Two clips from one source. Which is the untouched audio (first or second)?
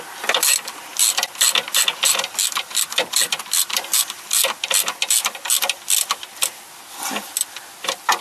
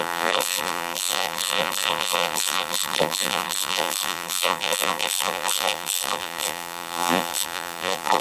first